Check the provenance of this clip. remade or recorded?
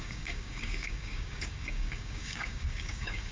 remade